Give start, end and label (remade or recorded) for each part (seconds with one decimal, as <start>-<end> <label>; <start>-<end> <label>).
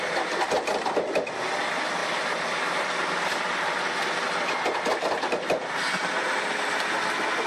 0.0-7.5 recorded